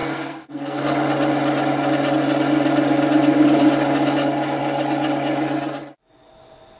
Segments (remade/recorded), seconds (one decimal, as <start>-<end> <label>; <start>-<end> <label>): 0.0-0.8 remade; 0.8-6.8 recorded